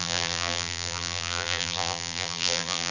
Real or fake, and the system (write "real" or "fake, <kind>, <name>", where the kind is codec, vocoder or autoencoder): fake, vocoder, BigVGAN v2